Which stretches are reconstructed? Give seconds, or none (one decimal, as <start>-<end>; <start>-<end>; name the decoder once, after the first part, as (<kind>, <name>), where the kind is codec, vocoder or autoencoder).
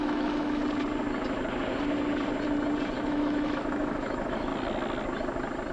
0.0-0.6 (autoencoder, DAC-VAE); 3.0-4.5